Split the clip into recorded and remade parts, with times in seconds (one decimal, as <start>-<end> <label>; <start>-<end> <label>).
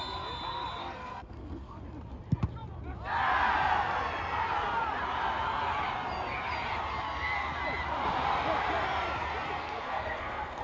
0.0-0.8 recorded; 0.8-1.8 remade; 1.8-9.6 recorded; 9.6-10.6 remade